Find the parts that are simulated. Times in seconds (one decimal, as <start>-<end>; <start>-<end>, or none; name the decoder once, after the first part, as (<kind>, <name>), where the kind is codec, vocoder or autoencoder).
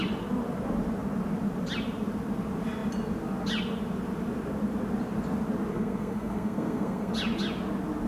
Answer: 5.7-7.1 (codec, SNAC)